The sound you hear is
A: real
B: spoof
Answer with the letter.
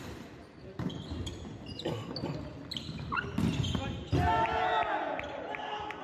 A